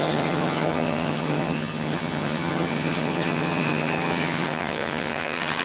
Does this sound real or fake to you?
fake